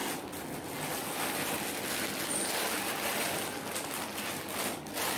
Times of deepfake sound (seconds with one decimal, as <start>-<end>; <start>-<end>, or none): none